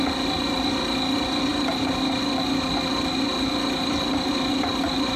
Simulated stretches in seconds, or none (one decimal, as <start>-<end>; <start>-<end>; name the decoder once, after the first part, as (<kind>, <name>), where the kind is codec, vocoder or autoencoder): none